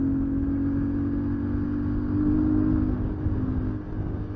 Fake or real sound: real